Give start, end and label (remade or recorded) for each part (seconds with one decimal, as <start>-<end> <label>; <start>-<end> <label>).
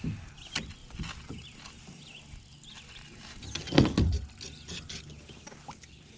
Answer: 0.0-6.2 recorded